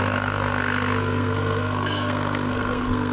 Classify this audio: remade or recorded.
remade